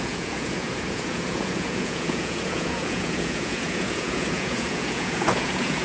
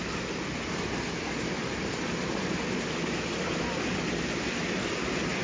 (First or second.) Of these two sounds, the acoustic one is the second